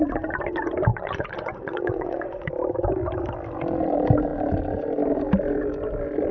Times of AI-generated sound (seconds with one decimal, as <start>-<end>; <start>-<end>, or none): 0.9-2.5